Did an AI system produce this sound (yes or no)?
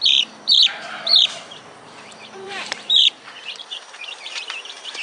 yes